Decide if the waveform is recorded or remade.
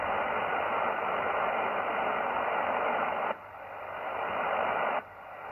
recorded